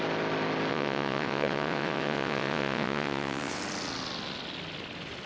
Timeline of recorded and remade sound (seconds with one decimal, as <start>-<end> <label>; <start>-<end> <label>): 0.0-0.7 recorded; 0.7-3.6 remade; 3.6-5.3 recorded